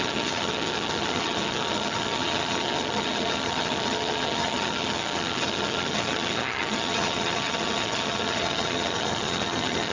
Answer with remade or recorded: remade